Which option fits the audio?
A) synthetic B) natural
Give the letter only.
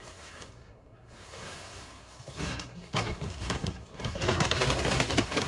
A